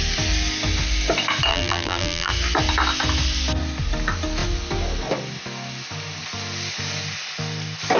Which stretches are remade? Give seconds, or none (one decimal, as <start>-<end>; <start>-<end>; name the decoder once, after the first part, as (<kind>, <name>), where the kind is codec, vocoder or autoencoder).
1.5-2.3 (vocoder, BigVGAN v2)